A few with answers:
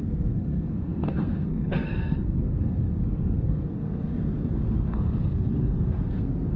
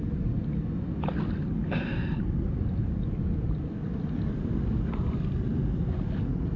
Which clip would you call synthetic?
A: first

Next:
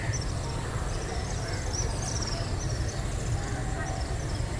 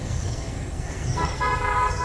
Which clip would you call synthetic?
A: second